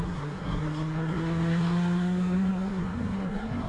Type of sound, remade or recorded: remade